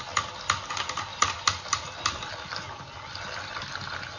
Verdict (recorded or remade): recorded